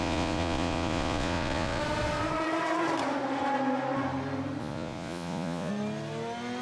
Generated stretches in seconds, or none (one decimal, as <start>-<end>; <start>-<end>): 0.0-1.8; 4.6-5.7